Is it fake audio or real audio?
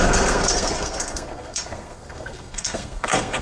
fake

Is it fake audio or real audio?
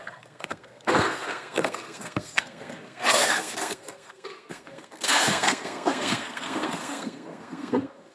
fake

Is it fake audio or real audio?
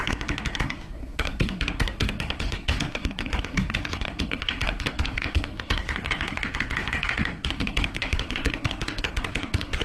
fake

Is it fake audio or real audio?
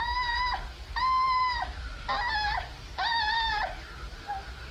real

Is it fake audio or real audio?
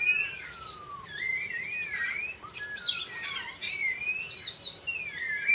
real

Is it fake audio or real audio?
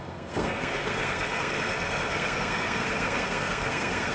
fake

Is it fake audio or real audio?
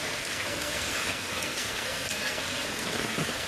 fake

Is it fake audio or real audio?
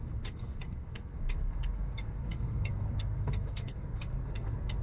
fake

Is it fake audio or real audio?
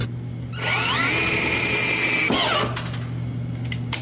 real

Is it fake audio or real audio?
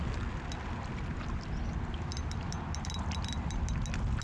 real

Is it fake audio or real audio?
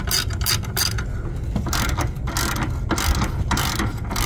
real